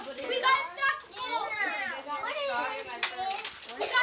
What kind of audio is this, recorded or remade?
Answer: recorded